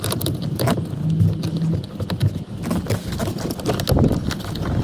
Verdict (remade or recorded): recorded